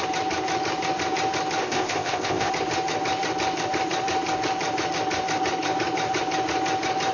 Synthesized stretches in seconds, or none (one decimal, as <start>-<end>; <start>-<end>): 1.6-2.5